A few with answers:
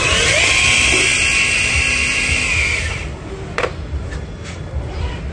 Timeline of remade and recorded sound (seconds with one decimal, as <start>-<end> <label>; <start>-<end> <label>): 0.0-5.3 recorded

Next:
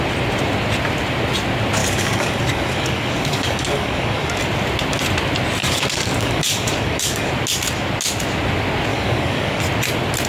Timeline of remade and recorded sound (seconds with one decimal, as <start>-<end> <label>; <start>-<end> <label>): 0.0-1.8 recorded; 1.8-4.4 remade; 4.4-5.6 recorded; 5.6-7.3 remade; 7.3-8.9 recorded; 8.9-9.6 remade; 9.6-10.3 recorded

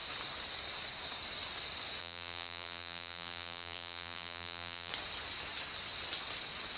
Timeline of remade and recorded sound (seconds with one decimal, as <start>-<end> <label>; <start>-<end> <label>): 0.0-2.0 recorded; 2.0-4.9 remade; 4.9-6.8 recorded